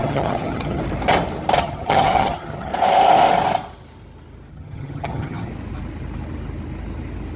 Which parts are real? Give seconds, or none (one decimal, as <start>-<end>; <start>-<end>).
0.8-1.6; 2.7-4.5; 5.5-7.4